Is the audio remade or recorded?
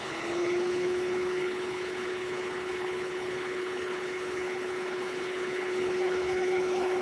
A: remade